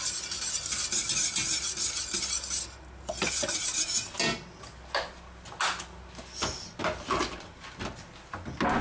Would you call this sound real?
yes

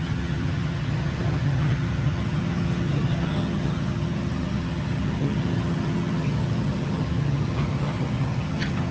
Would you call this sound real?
no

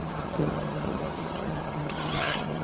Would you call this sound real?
no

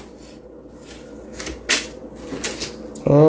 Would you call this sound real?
yes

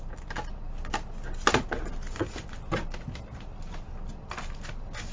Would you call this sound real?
yes